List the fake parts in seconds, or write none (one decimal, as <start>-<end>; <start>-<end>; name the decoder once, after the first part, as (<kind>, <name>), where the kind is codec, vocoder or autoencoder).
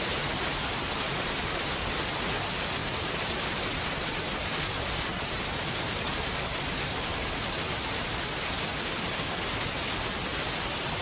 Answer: 2.8-3.9 (vocoder, BigVGAN v2)